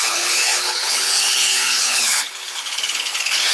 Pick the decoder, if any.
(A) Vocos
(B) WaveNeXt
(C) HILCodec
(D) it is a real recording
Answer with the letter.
C